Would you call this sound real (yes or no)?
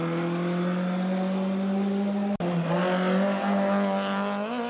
yes